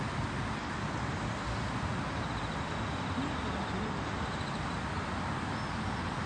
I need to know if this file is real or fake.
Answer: real